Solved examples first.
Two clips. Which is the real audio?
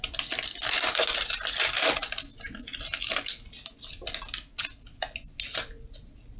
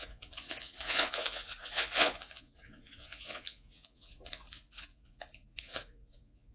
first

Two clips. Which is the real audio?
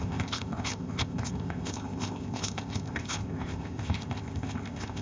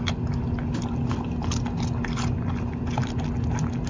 second